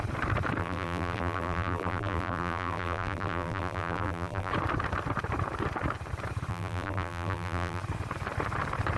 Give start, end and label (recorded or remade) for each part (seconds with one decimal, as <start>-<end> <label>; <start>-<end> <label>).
0.0-0.6 recorded; 0.6-4.5 remade; 4.5-6.5 recorded; 6.5-7.8 remade; 7.8-9.0 recorded